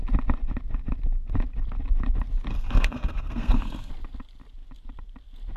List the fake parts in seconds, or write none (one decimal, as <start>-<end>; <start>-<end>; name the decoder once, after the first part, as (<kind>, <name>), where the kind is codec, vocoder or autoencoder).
2.5-3.9 (codec, SNAC)